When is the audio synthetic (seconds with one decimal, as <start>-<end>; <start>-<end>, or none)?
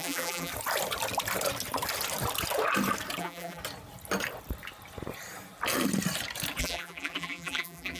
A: 0.0-0.5; 3.2-3.6; 6.6-8.0